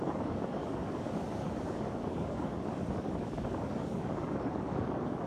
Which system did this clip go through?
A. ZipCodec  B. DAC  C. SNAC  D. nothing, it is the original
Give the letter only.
B